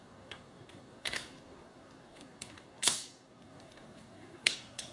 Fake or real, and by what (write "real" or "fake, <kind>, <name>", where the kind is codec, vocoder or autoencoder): fake, codec, SNAC